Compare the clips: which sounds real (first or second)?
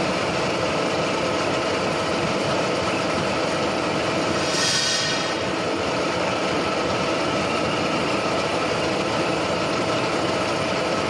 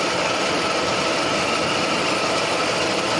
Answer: first